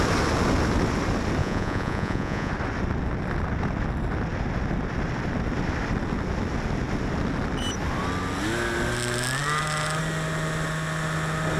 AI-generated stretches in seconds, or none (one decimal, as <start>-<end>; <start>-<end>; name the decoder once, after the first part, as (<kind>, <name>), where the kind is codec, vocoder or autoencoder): 1.4-2.5 (vocoder, Vocos)